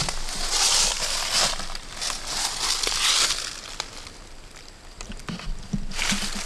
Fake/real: real